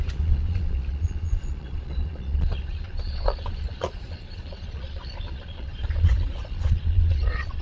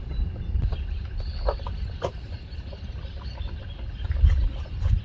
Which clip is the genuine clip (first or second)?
second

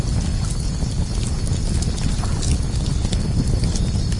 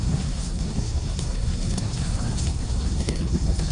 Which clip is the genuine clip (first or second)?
first